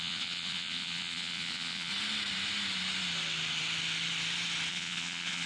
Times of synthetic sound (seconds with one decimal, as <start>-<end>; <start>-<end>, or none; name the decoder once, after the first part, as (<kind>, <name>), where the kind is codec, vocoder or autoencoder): 0.0-1.9 (vocoder, Vocos); 4.7-5.5